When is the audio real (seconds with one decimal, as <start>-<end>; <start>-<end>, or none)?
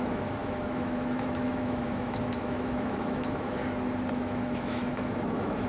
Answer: 3.6-4.1